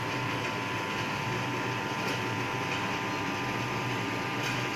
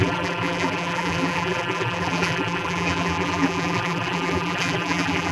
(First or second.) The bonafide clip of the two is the first